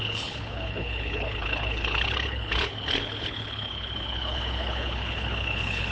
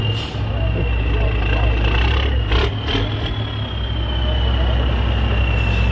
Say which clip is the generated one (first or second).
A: first